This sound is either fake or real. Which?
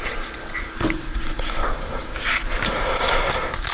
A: fake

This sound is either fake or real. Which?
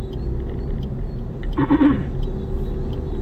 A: real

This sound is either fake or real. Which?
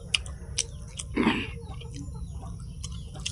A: real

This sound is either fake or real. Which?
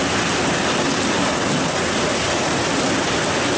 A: real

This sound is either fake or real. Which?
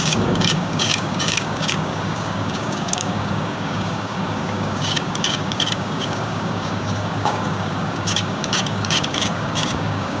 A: fake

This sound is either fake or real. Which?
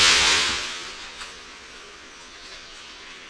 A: fake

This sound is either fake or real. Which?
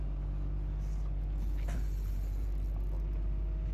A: real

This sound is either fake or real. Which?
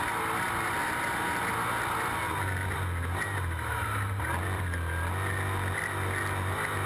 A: real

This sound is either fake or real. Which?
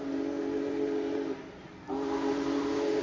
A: real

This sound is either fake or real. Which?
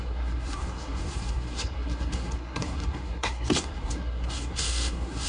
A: fake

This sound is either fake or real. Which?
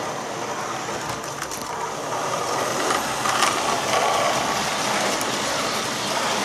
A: real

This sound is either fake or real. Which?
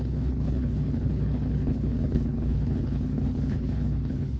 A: fake